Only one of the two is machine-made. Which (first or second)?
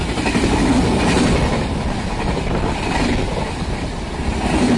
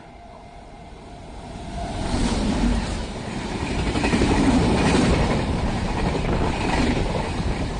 second